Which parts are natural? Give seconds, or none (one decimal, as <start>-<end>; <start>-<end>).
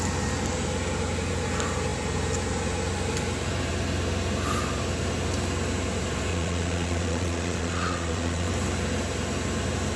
0.0-6.3; 8.5-10.0